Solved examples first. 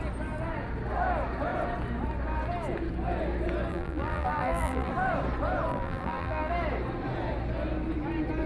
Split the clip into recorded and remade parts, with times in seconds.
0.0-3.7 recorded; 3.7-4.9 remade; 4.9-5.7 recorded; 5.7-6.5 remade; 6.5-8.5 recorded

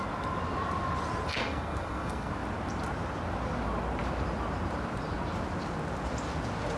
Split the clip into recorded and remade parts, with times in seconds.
0.0-1.4 recorded; 1.4-2.3 remade; 2.3-6.8 recorded

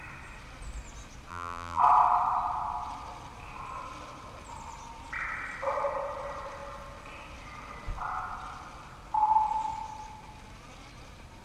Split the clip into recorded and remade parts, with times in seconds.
0.0-1.3 recorded; 1.3-1.8 remade; 1.8-11.4 recorded

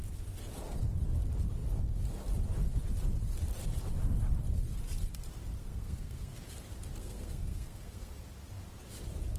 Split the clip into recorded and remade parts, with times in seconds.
0.0-5.6 recorded; 5.6-6.4 remade; 6.4-7.0 recorded; 7.0-8.1 remade; 8.1-9.4 recorded

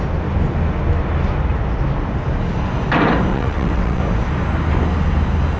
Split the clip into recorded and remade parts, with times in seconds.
0.0-3.3 recorded; 3.3-4.0 remade; 4.0-5.6 recorded